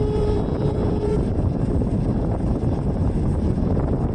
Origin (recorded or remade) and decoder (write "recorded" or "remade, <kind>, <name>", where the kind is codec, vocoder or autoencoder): remade, vocoder, BigVGAN v2